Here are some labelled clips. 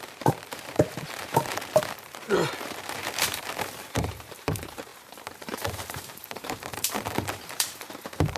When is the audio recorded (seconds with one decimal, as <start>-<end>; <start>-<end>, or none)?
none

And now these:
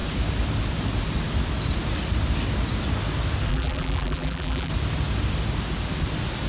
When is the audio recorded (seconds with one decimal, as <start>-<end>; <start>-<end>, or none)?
0.0-3.5; 4.7-6.5

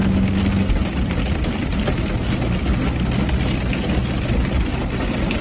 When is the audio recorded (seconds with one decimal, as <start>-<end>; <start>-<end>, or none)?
0.0-5.4